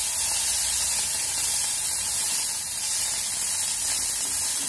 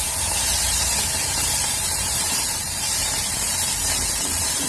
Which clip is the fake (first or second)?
second